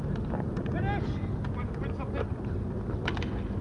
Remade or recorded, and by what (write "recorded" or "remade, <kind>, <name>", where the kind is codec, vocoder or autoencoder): recorded